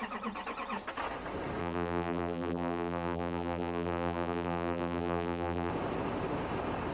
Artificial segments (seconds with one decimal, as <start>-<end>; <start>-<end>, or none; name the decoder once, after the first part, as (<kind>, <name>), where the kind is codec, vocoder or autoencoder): 1.6-5.7 (vocoder, BigVGAN v2)